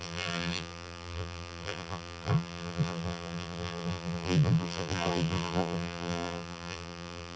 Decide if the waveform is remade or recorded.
remade